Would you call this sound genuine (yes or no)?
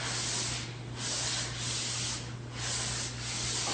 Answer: yes